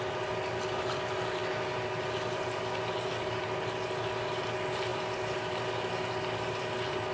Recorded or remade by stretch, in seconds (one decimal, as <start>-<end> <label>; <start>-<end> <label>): 0.0-7.1 recorded